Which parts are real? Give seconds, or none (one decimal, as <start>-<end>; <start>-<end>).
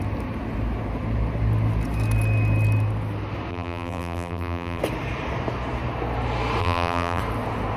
0.0-3.5; 4.8-6.6; 7.2-7.8